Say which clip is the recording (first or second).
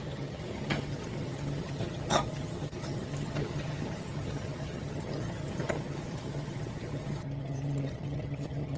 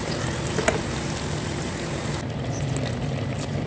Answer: second